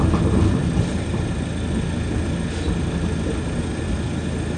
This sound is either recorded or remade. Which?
recorded